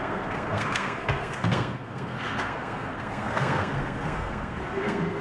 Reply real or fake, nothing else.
fake